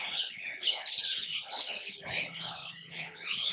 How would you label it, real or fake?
fake